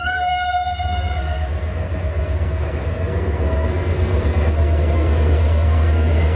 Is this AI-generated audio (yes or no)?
yes